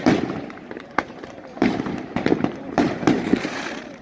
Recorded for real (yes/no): no